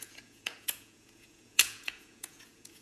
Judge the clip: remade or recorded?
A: remade